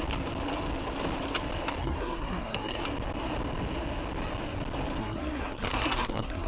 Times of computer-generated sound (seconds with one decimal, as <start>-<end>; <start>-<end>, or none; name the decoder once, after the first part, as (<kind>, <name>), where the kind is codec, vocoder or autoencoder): 1.8-2.8 (codec, SNAC); 5.0-6.5

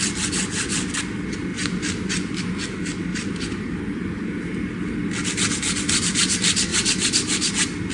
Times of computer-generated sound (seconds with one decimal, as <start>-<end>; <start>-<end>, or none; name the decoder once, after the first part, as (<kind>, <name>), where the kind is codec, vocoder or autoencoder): 1.5-2.4 (vocoder, BigVGAN v2); 3.1-3.6; 6.7-7.5

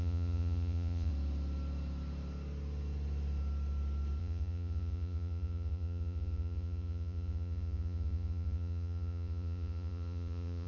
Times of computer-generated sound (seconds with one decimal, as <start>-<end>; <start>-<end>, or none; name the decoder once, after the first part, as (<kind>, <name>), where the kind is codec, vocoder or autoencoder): 0.0-1.1 (vocoder, Vocos); 4.2-10.7

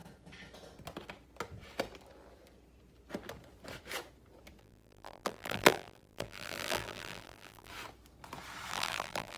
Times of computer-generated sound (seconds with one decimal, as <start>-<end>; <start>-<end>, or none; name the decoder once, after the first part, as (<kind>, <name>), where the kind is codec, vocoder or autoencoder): 4.6-7.7 (vocoder, BigVGAN v2); 8.7-9.4

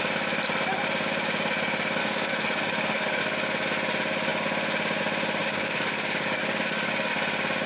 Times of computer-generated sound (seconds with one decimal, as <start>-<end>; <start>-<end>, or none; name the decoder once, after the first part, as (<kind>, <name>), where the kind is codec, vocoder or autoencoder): 2.0-3.2 (codec, DAC); 5.4-7.1

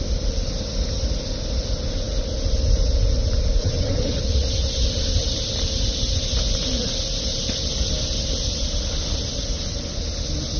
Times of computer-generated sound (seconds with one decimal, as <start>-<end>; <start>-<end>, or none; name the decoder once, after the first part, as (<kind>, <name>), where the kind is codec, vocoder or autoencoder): 3.6-4.2 (vocoder, HiFi-GAN)

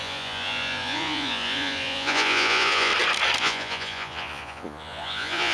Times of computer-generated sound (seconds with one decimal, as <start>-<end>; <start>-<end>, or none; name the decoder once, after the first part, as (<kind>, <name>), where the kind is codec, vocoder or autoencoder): 0.0-2.9 (vocoder, Vocos); 3.4-5.5

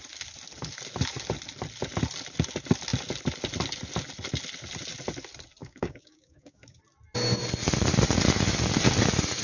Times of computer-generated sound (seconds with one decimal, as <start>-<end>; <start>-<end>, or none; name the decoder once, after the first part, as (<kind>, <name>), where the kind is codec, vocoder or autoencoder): 5.6-6.8 (codec, DAC)